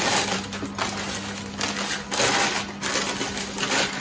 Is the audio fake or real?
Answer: real